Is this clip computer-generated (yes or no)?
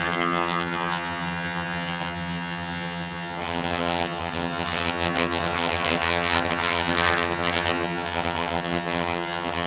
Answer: yes